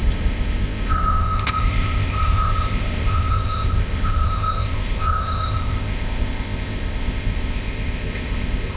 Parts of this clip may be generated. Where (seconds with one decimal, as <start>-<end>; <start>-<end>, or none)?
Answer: 0.0-8.8